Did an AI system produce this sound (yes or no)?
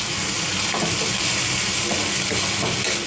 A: no